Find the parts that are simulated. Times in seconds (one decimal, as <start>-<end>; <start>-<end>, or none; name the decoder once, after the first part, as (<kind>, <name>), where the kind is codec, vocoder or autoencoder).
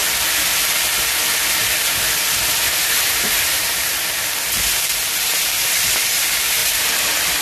none